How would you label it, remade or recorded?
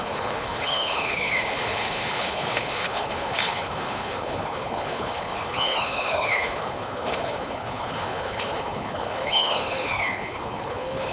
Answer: remade